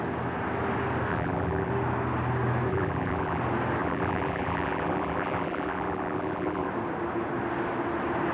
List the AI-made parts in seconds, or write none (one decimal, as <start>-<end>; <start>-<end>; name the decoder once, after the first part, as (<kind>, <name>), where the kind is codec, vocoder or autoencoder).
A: 1.1-1.7 (vocoder, BigVGAN v2); 2.7-3.4; 3.8-6.7